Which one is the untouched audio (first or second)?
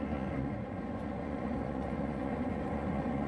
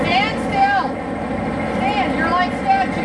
second